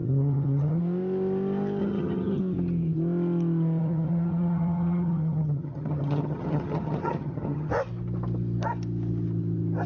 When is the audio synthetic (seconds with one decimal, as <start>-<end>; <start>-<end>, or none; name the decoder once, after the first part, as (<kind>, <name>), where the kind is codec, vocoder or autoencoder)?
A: 0.0-0.8 (vocoder, HiFi-GAN); 1.8-2.4; 3.8-7.7

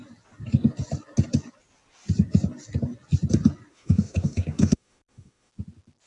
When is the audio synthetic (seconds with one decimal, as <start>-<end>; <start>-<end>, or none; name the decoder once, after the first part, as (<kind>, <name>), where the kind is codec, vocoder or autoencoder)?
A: 3.7-5.5 (autoencoder, DAC-VAE)